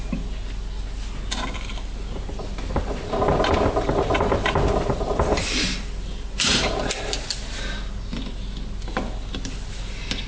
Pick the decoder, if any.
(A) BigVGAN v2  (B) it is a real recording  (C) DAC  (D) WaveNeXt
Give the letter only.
B